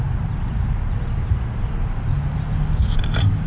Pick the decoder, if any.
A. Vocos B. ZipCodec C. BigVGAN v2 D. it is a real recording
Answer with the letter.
D